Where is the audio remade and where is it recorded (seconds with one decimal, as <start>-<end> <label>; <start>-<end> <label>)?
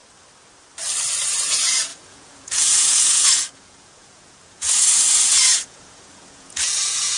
0.0-1.5 recorded; 1.5-7.2 remade